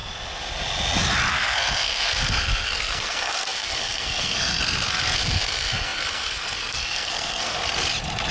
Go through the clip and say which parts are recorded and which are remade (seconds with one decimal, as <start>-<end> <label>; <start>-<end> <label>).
0.0-1.3 recorded; 1.3-7.6 remade; 7.6-8.3 recorded